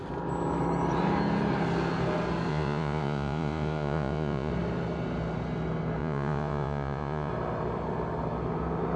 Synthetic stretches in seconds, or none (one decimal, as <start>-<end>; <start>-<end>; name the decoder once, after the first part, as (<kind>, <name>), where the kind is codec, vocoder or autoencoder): 2.5-4.5 (vocoder, Vocos); 6.0-7.3